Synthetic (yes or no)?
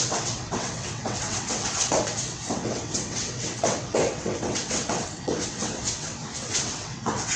yes